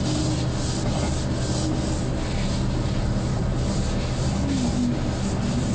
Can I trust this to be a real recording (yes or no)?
yes